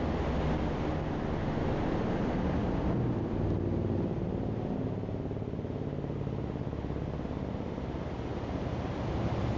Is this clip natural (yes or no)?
yes